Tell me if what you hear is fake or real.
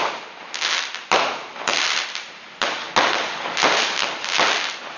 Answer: real